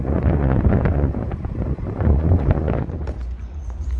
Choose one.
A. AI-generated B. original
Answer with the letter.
A